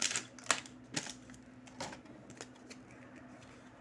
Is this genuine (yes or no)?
yes